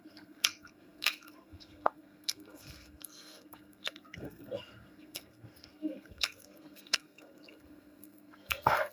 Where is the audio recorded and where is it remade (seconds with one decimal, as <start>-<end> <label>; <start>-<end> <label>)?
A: 0.0-8.9 remade